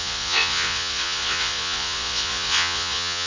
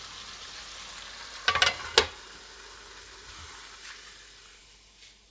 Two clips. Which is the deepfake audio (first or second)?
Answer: first